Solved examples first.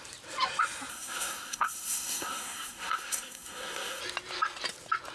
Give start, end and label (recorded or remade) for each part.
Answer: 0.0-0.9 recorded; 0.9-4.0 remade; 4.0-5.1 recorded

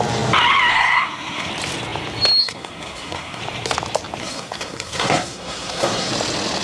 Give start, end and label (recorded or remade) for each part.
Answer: 0.0-0.7 recorded; 0.7-1.5 remade; 1.5-2.4 recorded; 2.4-3.4 remade; 3.4-4.2 recorded; 4.2-6.1 remade; 6.1-6.6 recorded

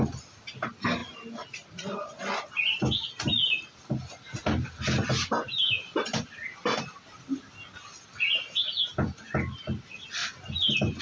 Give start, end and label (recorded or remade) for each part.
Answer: 0.0-11.0 recorded